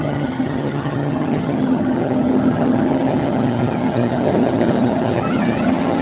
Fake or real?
fake